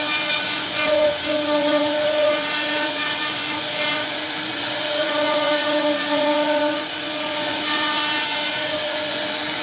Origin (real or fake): fake